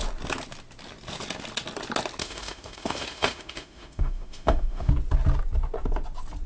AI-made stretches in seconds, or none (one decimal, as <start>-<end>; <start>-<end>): 2.2-4.9